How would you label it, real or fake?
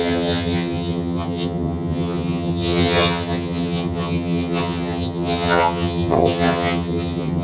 fake